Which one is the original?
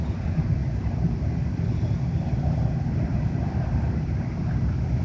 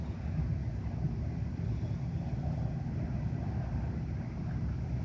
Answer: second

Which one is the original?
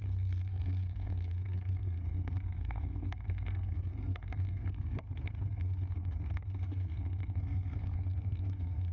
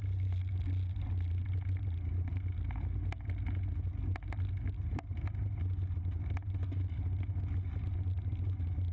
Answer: second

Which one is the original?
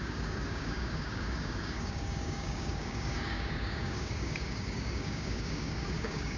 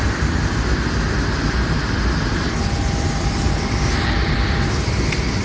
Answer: second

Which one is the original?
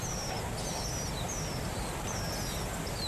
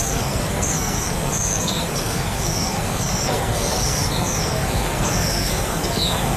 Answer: first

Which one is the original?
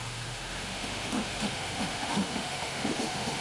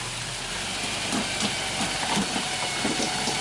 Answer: second